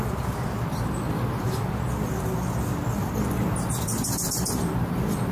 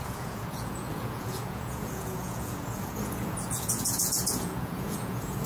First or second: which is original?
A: first